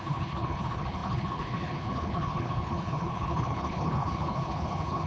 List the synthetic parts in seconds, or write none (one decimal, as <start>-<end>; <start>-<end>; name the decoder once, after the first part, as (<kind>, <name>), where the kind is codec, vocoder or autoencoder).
0.0-5.1 (codec, HILCodec)